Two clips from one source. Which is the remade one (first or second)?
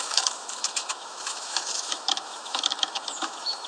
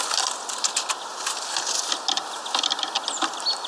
first